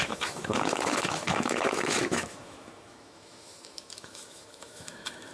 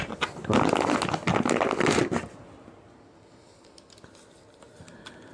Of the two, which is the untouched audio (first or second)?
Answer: second